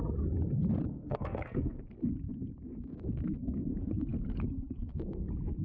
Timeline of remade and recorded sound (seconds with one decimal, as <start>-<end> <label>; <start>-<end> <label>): 0.0-0.9 recorded; 0.9-1.8 remade; 1.8-5.6 recorded